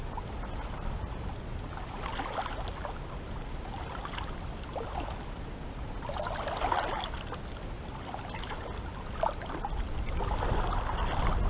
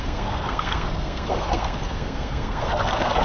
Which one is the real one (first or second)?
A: first